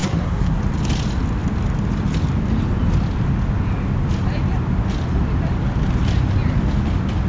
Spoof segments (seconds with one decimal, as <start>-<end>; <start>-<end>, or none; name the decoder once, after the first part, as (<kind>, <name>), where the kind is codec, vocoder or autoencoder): 0.0-0.6 (codec, SNAC)

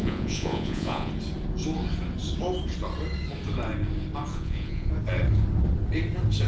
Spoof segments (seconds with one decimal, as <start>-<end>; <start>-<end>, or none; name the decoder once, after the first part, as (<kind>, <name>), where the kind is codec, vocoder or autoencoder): 0.0-1.1 (vocoder, Vocos); 4.3-4.9

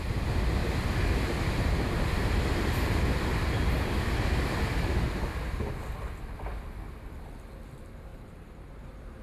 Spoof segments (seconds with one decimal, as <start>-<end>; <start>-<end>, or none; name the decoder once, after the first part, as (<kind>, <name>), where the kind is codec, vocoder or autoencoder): 8.1-9.2 (vocoder, BigVGAN v2)

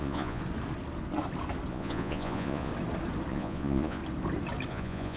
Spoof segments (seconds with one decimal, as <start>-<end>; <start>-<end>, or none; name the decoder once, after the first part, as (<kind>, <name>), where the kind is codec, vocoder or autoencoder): 0.0-0.4 (vocoder, Vocos); 1.7-2.7; 3.3-4.0; 4.7-5.2